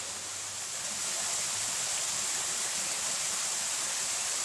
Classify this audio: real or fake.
real